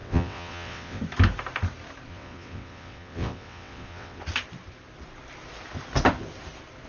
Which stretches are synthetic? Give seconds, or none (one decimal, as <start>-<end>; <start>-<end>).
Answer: 0.0-1.0; 2.1-4.2

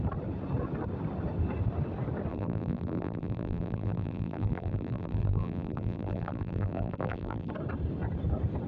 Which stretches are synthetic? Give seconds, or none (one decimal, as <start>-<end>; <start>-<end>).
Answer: 2.3-7.5

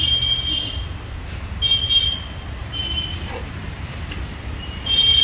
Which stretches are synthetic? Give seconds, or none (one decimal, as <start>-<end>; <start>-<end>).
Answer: 2.6-5.2

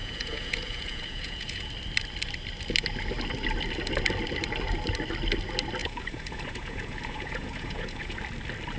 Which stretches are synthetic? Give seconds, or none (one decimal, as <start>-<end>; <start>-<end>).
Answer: 0.0-1.7; 5.8-8.2

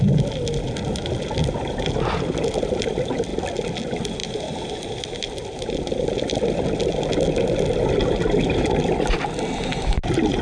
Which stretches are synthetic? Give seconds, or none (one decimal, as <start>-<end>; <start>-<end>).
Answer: none

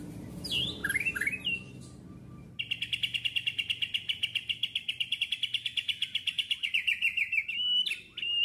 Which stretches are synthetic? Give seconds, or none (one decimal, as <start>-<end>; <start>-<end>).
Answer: none